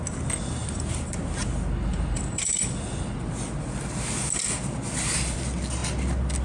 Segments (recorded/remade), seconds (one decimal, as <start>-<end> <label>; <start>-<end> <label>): 0.0-0.6 recorded; 0.6-1.2 remade; 1.2-1.9 recorded; 1.9-2.9 remade; 2.9-6.4 recorded